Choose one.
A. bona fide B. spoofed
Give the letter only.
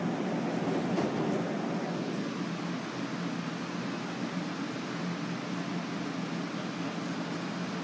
A